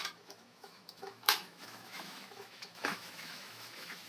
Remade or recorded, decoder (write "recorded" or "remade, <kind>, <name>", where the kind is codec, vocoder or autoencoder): remade, autoencoder, DAC-VAE